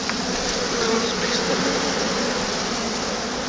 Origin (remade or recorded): recorded